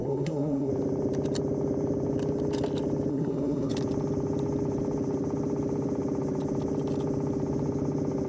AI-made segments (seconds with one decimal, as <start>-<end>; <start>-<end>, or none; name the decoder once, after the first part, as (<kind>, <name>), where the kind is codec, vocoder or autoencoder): 0.0-0.7 (codec, SNAC); 3.1-3.7

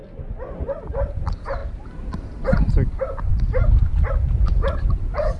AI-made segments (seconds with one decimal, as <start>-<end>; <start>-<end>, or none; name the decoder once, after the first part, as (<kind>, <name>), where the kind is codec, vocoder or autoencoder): none

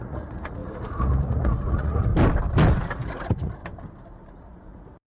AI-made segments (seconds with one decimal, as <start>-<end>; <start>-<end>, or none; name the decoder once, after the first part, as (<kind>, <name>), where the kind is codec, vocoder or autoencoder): 0.0-2.1 (vocoder, Vocos); 3.1-3.6; 4.3-5.1